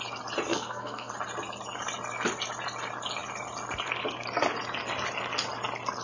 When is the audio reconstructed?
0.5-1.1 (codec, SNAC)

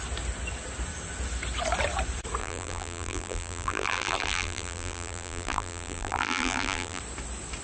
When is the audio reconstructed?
2.4-7.0 (vocoder, BigVGAN v2)

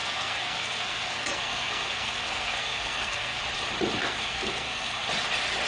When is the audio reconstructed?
0.0-3.4 (codec, SNAC); 4.0-5.0

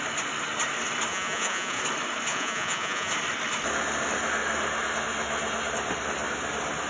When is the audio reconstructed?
1.1-1.8 (vocoder, Vocos); 2.3-3.1

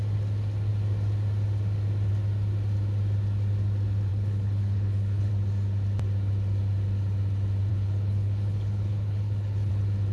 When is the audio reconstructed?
4.1-5.3 (codec, HILCodec); 7.7-9.7